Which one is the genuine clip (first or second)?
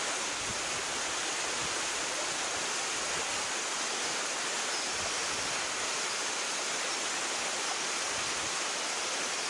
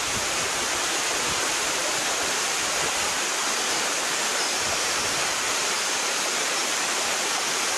first